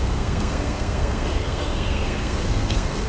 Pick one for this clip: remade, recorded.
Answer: remade